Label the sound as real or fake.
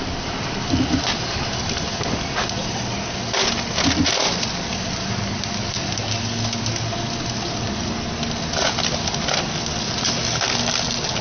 real